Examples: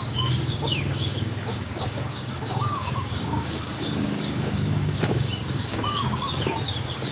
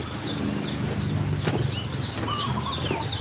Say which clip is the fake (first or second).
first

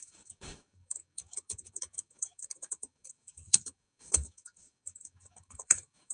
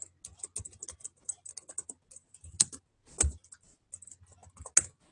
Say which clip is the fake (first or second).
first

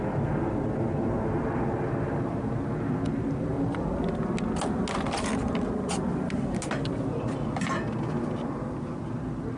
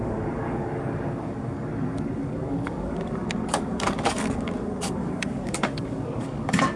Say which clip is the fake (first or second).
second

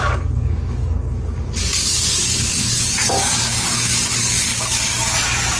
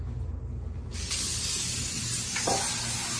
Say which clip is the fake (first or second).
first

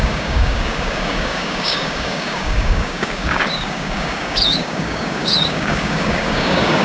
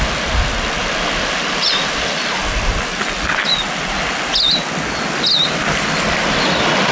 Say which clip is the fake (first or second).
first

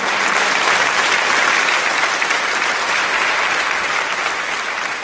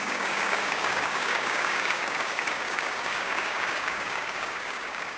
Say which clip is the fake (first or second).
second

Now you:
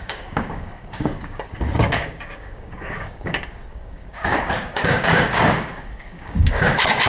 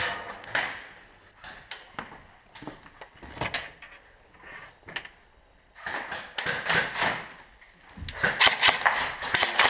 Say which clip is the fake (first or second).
first